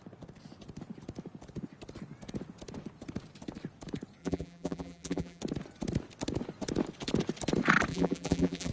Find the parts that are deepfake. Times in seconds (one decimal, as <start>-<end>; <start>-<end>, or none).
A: 4.2-5.4; 7.9-8.7